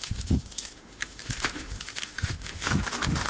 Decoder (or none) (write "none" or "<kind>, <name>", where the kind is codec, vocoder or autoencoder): autoencoder, DAC-VAE